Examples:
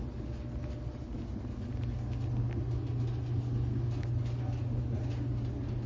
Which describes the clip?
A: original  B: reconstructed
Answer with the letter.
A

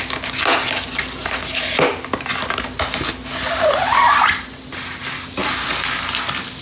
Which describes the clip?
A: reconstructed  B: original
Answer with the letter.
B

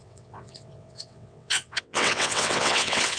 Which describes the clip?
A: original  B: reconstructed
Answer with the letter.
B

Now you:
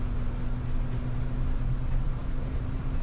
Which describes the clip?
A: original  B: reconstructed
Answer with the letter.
A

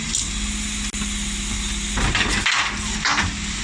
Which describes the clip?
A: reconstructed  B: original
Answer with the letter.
B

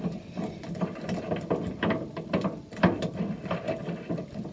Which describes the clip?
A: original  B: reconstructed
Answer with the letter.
A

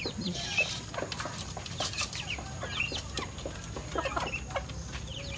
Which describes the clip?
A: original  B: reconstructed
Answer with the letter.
A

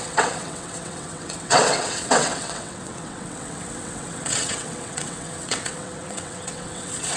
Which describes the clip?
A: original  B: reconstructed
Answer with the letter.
B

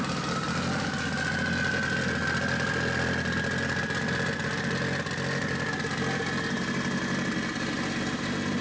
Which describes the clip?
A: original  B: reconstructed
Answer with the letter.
A